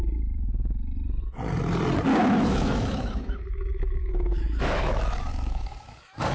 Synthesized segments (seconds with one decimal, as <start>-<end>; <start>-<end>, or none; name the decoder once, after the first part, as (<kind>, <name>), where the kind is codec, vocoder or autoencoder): 2.2-6.3 (autoencoder, DAC-VAE)